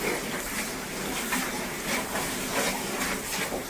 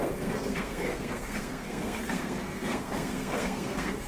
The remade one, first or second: second